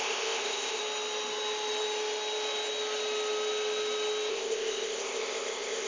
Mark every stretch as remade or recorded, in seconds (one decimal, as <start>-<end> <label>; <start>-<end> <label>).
0.0-0.8 remade; 0.8-4.3 recorded; 4.3-5.9 remade

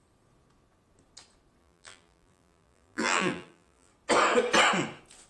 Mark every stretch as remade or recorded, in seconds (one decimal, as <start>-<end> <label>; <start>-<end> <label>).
0.0-1.6 recorded; 1.6-3.9 remade; 3.9-5.3 recorded

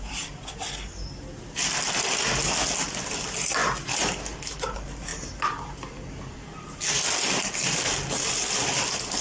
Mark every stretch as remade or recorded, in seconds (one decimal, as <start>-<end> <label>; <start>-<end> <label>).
0.0-9.2 recorded

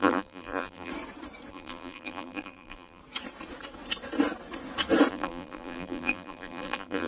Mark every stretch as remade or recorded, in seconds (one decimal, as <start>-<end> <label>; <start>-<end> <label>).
0.0-0.9 remade; 0.9-1.5 recorded; 1.5-3.0 remade; 3.0-5.1 recorded; 5.1-7.1 remade

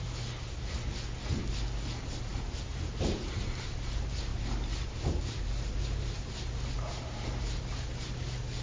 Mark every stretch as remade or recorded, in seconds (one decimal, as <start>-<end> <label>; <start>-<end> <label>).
0.0-2.2 recorded; 2.2-8.6 remade

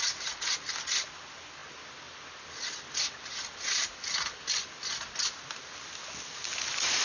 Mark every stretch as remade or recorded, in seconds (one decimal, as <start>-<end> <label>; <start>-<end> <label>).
0.0-7.0 recorded